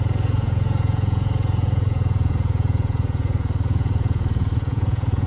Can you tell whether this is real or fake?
fake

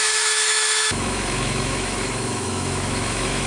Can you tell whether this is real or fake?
fake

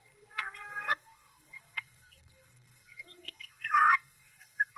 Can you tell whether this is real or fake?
fake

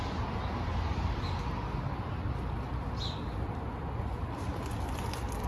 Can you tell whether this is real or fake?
real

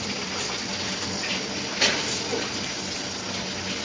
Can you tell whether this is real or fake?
real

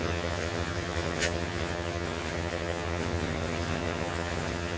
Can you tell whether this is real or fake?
fake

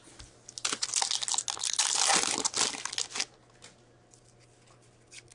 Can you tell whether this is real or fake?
real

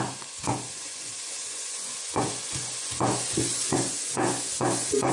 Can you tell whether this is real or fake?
fake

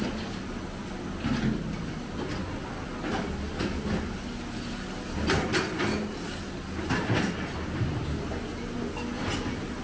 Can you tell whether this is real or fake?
real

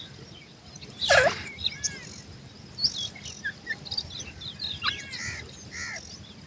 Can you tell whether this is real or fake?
real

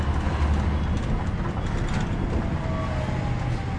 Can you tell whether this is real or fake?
real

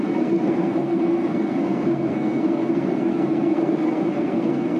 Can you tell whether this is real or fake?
fake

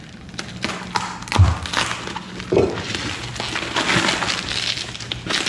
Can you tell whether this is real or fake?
real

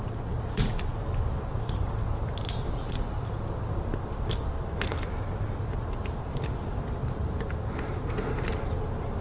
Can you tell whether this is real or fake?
real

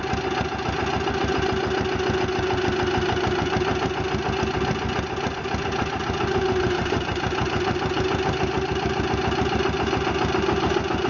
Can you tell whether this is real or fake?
real